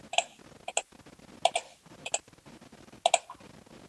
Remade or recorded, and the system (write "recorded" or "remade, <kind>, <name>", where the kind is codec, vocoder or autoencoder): recorded